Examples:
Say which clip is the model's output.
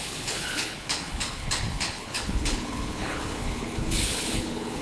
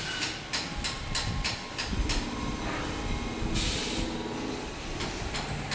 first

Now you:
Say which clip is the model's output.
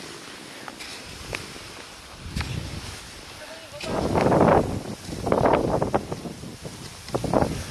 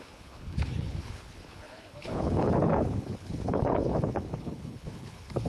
second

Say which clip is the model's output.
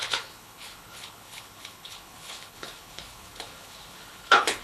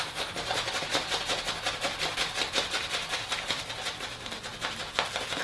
first